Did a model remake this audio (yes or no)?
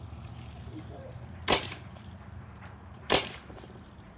yes